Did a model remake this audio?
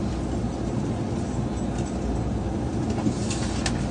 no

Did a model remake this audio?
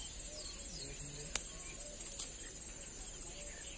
no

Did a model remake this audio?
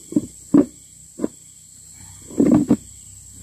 no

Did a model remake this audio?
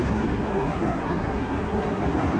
yes